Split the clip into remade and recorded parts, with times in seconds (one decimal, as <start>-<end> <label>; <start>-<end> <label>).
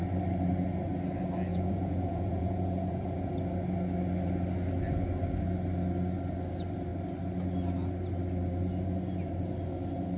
0.0-1.5 recorded; 1.5-3.3 remade; 3.3-10.2 recorded